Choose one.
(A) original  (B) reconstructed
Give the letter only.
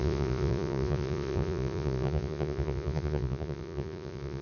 B